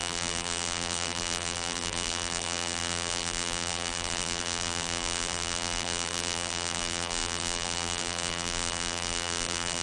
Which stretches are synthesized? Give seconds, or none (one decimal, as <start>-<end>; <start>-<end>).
0.0-9.8